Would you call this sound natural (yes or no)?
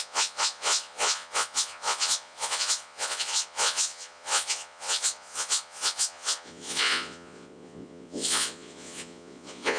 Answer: no